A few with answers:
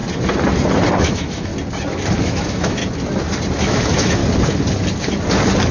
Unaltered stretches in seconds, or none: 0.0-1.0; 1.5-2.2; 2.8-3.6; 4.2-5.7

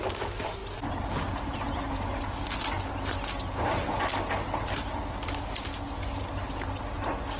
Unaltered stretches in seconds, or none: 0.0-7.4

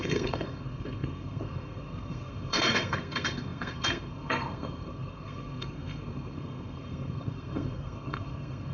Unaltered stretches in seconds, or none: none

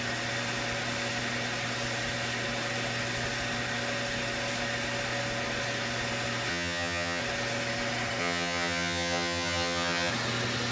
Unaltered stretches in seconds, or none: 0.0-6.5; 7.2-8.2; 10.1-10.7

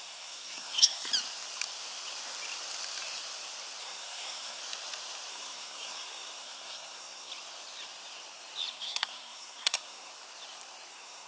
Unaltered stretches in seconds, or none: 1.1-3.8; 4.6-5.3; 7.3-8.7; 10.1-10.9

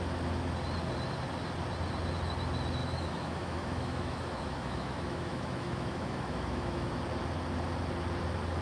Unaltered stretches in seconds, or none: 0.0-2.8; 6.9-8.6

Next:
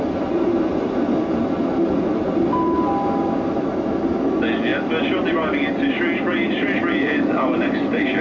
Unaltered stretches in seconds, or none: 0.0-8.2